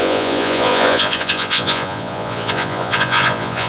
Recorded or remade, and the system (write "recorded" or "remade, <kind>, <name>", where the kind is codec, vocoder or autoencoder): remade, vocoder, Vocos